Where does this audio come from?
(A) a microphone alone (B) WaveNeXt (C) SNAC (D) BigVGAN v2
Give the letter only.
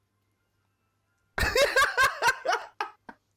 A